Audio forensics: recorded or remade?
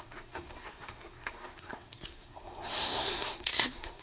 remade